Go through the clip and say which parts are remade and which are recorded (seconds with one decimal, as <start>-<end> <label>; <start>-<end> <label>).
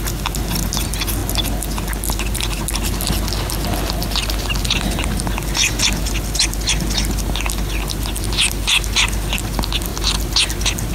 0.0-10.9 recorded